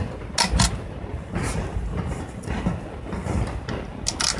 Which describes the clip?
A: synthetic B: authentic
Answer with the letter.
B